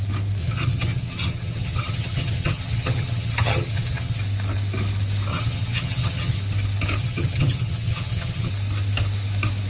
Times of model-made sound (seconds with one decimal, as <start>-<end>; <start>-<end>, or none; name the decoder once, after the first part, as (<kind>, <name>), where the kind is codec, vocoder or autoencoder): 0.4-4.2 (vocoder, HiFi-GAN); 5.3-6.4; 7.0-8.5

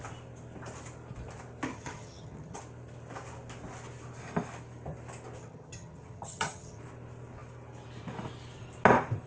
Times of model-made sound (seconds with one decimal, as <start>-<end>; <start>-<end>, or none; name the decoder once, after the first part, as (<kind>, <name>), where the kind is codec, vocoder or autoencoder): 1.7-2.6 (vocoder, HiFi-GAN); 5.4-6.8

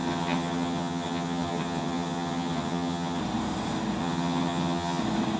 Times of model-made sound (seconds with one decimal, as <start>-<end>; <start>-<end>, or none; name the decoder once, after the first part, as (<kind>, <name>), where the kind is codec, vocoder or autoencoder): 0.0-3.2 (vocoder, HiFi-GAN); 4.0-5.0

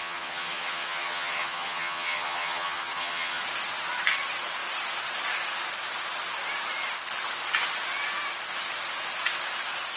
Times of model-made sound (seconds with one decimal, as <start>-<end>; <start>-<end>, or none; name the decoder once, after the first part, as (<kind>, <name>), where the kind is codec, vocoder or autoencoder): 0.0-3.4 (vocoder, HiFi-GAN)

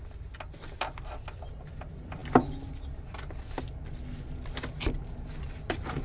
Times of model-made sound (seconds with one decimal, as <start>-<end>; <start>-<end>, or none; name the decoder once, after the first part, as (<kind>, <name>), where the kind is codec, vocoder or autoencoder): none

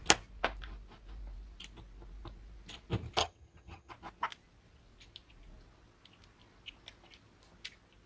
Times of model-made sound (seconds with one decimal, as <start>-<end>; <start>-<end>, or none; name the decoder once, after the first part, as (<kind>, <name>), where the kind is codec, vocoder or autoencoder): 3.2-3.9 (vocoder, HiFi-GAN)